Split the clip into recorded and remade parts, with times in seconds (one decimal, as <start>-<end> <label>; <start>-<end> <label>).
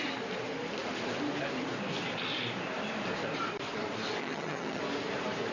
0.0-4.2 recorded; 4.2-4.8 remade; 4.8-5.5 recorded